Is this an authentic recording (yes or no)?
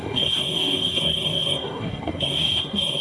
no